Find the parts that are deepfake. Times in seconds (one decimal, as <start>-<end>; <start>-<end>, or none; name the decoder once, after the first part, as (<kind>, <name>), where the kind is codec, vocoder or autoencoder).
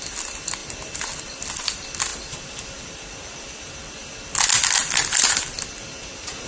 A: none